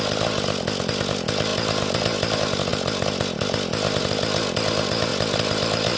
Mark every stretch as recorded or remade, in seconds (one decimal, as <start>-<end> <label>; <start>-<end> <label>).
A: 0.0-6.0 recorded

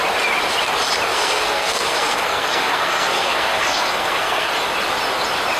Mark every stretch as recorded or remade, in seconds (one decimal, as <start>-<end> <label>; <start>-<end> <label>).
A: 0.0-1.1 recorded; 1.1-4.5 remade; 4.5-5.6 recorded

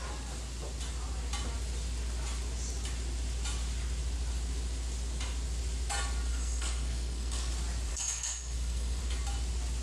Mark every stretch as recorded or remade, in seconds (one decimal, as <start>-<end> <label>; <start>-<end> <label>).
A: 0.0-6.3 recorded; 6.3-7.5 remade; 7.5-7.9 recorded; 7.9-9.0 remade; 9.0-9.8 recorded